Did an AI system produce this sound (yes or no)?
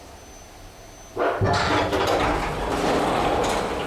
no